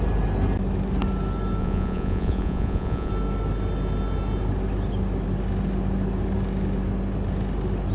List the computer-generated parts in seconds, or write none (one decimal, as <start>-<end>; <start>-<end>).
1.6-3.1